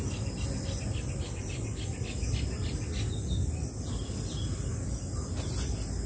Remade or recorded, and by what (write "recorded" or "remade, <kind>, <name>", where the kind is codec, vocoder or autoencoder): recorded